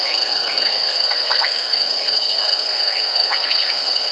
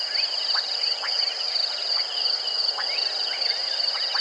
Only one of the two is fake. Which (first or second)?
first